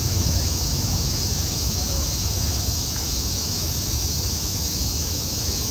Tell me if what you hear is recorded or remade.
remade